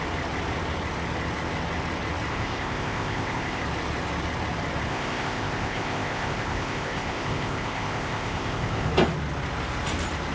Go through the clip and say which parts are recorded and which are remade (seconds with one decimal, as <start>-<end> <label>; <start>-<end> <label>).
0.0-2.3 recorded; 2.3-3.6 remade; 3.6-4.9 recorded; 4.9-8.9 remade; 8.9-10.3 recorded